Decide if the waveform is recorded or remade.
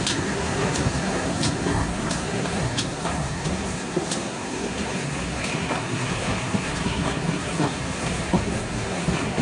remade